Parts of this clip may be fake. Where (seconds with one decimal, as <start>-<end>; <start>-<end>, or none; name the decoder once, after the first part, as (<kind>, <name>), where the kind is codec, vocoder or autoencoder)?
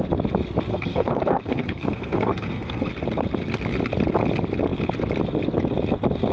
0.7-2.9 (codec, SNAC)